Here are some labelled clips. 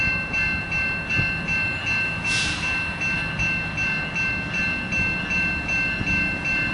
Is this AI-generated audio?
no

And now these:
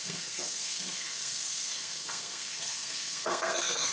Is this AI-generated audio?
yes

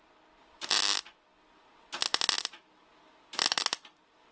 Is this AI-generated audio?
no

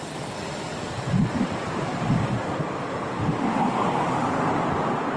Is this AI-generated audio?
yes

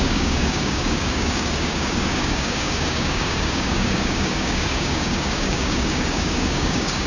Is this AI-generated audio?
yes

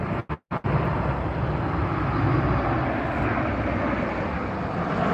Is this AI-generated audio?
no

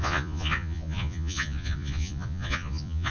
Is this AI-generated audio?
yes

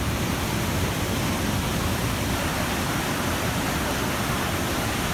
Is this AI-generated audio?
no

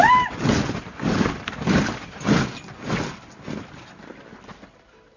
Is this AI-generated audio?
no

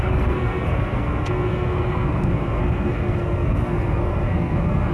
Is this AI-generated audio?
yes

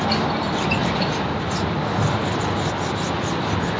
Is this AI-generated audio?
no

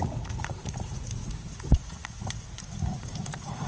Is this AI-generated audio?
yes